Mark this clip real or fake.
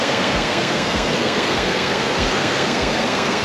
fake